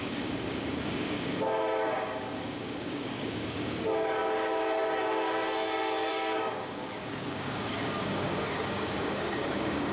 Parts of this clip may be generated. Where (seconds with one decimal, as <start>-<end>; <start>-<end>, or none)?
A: 0.0-9.9